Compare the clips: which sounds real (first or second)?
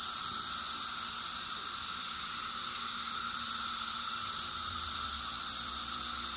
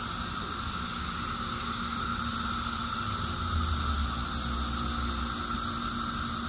second